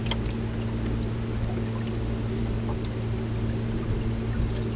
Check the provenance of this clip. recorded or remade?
recorded